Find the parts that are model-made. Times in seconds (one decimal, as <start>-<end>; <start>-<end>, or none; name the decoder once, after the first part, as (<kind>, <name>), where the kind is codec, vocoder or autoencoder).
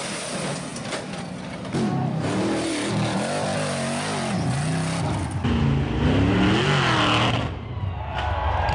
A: none